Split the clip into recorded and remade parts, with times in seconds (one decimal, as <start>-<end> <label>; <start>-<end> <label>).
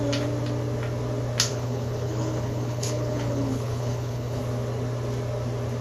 0.0-1.5 recorded; 1.5-4.4 remade; 4.4-5.8 recorded